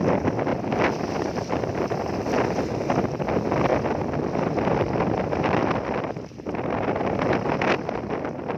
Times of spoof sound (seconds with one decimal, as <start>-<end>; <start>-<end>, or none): none